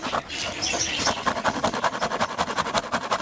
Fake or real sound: real